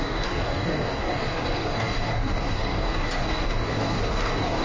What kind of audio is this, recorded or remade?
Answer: remade